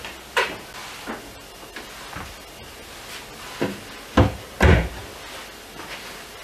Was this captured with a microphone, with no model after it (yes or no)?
yes